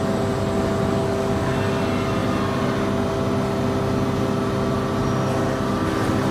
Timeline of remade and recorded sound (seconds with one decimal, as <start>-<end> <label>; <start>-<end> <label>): 0.0-1.0 recorded; 1.0-1.5 remade; 1.5-6.3 recorded